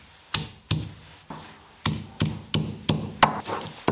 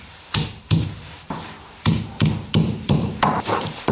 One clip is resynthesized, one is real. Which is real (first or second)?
first